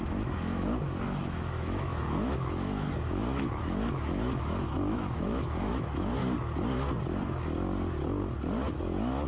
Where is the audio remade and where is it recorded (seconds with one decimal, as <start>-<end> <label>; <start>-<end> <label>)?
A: 0.0-6.2 remade; 6.2-8.7 recorded; 8.7-9.3 remade